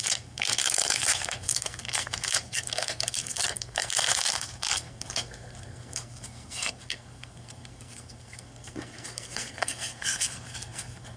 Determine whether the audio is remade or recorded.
remade